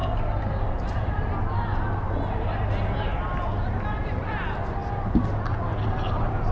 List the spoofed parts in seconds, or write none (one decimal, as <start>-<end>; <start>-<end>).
none